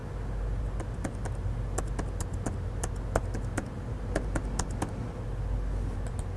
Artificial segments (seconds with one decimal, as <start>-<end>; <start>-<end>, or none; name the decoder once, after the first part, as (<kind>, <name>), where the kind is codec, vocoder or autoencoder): none